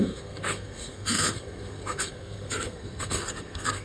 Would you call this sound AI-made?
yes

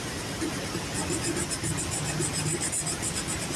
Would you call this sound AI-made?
no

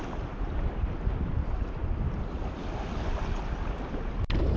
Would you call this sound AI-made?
no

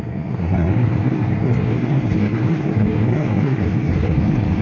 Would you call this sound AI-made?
yes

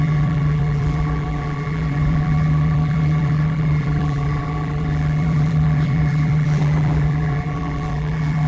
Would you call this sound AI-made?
yes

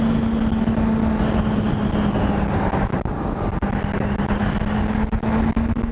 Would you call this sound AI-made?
no